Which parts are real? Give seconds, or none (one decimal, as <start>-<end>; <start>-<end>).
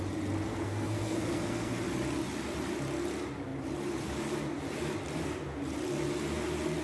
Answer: 0.0-0.5; 1.7-6.8